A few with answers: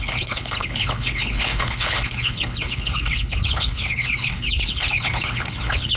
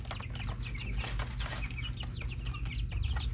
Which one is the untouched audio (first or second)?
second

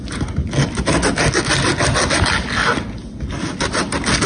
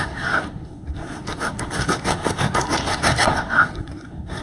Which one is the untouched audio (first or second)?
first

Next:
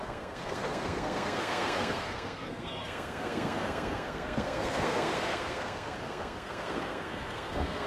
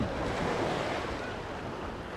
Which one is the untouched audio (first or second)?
second